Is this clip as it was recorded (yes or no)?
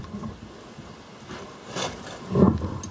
yes